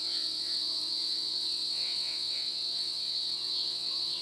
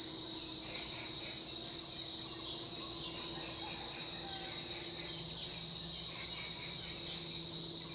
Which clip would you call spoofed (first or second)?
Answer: first